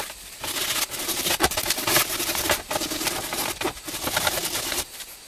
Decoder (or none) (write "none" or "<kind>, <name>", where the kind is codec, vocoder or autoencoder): none